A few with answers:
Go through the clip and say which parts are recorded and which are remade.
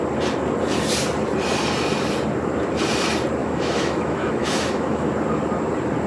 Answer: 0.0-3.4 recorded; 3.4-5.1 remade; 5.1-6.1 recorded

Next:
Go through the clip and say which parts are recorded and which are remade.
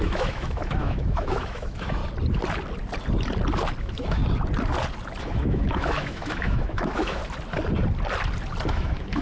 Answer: 0.0-2.0 remade; 2.0-3.8 recorded; 3.8-4.2 remade; 4.2-5.2 recorded; 5.2-7.2 remade; 7.2-8.7 recorded; 8.7-9.2 remade